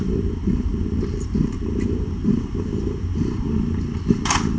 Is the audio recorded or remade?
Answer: remade